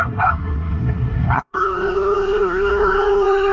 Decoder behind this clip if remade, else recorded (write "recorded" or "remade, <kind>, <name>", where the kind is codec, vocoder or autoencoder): remade, codec, SNAC